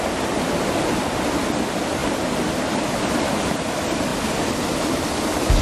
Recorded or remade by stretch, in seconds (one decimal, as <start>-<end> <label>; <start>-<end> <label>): 0.0-2.0 remade; 2.0-3.4 recorded; 3.4-4.1 remade; 4.1-5.6 recorded

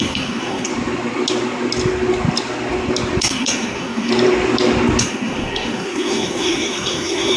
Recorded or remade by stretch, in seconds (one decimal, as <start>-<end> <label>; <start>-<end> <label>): 0.0-0.7 remade; 0.7-3.2 recorded; 3.2-4.1 remade; 4.1-5.0 recorded; 5.0-7.4 remade

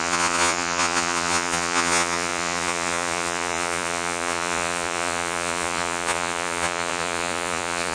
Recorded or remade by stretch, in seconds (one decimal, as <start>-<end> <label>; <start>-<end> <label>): 0.0-7.9 remade